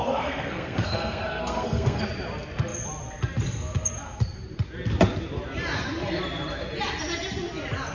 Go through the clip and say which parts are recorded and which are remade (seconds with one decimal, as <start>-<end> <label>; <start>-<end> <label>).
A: 0.0-2.0 remade; 2.0-7.9 recorded